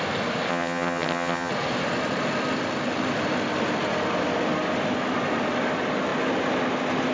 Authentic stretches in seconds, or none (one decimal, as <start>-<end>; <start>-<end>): 0.0-0.5; 1.5-7.1